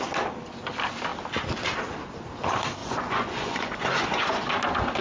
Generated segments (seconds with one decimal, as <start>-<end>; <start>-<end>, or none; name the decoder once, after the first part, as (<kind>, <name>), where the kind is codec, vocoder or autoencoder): 2.8-4.5 (vocoder, Vocos)